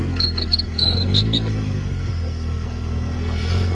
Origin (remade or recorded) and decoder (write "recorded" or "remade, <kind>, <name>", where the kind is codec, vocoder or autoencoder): remade, codec, SNAC